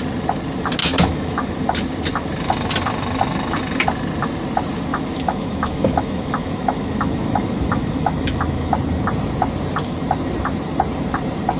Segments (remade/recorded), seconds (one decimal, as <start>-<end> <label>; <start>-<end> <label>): 0.0-0.8 recorded; 0.8-1.6 remade; 1.6-4.9 recorded; 4.9-8.7 remade; 8.7-11.6 recorded